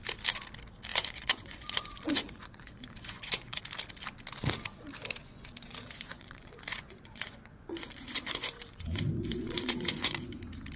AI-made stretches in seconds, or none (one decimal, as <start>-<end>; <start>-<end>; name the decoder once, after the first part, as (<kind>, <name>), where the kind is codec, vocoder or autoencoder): 0.9-3.6 (vocoder, Vocos); 5.2-10.4